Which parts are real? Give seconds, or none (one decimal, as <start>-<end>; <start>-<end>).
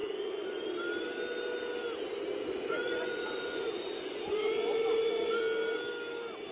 0.6-2.4; 5.4-6.5